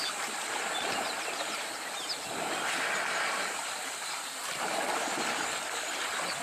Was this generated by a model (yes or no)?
no